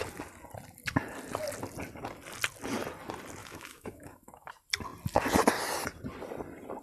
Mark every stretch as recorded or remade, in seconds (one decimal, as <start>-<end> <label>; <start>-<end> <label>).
0.0-3.4 recorded; 3.4-4.5 remade; 4.5-6.8 recorded